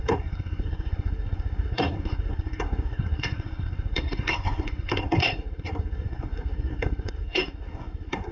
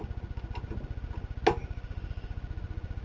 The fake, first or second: first